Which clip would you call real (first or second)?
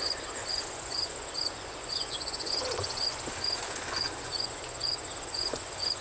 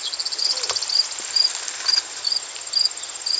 second